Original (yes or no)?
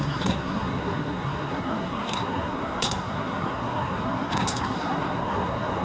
no